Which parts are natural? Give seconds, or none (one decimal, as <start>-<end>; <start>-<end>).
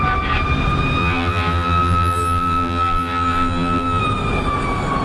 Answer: 0.0-1.0; 4.0-5.0